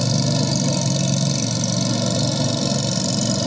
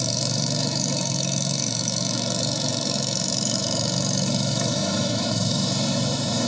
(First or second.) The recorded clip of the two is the first